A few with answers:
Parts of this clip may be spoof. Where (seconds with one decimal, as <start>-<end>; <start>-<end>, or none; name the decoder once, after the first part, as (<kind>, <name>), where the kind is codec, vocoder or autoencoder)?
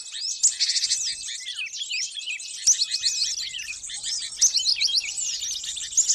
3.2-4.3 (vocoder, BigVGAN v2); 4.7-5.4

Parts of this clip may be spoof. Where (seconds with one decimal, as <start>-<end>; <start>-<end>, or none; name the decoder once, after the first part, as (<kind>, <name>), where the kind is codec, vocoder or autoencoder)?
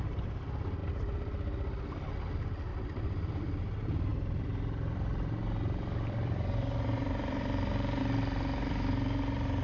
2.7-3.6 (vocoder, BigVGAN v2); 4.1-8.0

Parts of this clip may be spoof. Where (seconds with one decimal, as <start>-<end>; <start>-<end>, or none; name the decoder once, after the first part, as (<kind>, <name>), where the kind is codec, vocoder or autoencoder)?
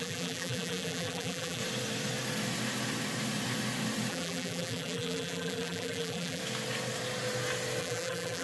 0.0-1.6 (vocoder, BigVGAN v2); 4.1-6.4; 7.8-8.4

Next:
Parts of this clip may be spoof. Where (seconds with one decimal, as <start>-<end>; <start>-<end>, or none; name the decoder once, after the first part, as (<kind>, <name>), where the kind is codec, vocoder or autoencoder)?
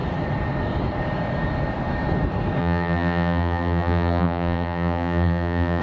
2.6-5.8 (vocoder, BigVGAN v2)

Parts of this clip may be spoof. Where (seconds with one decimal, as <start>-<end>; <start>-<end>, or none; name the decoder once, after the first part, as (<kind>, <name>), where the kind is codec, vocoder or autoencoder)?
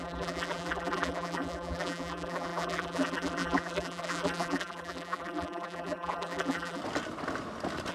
0.0-6.8 (vocoder, BigVGAN v2)